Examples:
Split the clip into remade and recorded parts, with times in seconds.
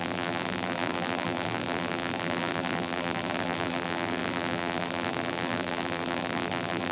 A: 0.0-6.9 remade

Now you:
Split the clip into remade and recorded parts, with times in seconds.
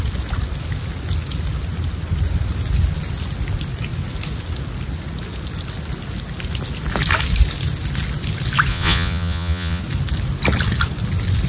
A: 0.0-8.7 recorded; 8.7-9.8 remade; 9.8-11.5 recorded